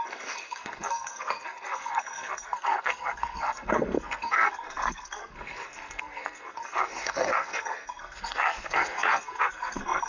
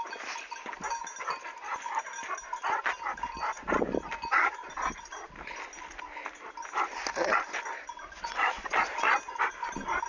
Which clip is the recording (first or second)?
second